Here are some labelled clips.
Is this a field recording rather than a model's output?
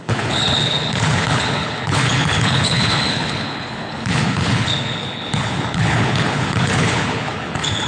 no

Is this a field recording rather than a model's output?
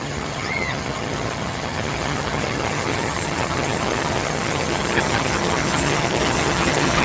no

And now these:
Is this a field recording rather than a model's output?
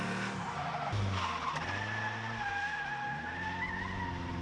yes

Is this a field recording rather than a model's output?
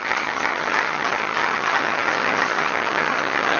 no